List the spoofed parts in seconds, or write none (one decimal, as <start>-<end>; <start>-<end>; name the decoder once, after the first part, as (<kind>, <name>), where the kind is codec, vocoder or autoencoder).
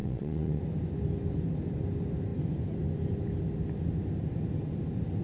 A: 0.0-0.6 (vocoder, WaveNeXt)